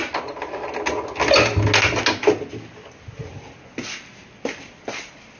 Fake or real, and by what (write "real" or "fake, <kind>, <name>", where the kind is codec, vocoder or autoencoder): real